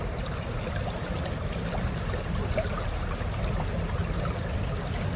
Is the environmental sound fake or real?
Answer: real